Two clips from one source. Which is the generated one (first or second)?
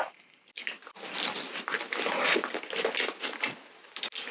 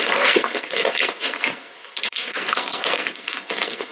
second